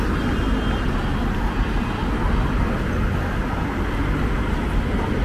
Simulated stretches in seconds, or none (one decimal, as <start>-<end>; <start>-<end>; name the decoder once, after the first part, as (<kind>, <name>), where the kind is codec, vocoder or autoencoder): none